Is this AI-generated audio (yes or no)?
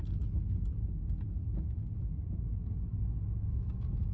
no